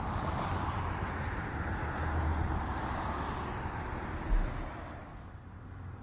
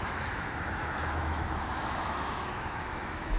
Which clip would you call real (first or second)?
first